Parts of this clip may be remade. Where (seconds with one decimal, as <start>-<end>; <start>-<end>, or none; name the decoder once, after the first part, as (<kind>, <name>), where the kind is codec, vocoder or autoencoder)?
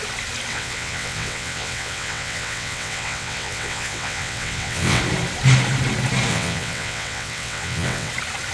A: 0.5-5.0 (vocoder, WaveNeXt); 6.3-8.1